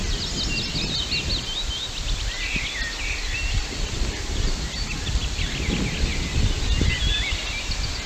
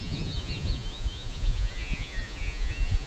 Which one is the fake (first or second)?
second